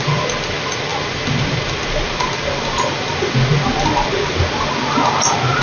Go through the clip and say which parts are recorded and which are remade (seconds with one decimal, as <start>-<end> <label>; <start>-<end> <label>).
0.0-5.6 recorded